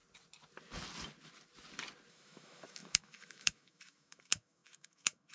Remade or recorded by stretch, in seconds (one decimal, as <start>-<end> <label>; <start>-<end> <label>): 0.0-2.1 recorded; 2.1-5.3 remade